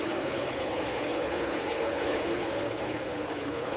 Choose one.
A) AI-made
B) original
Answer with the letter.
A